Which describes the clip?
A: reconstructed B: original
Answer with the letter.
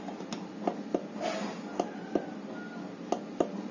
B